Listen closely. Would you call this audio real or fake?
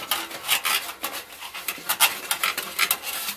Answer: real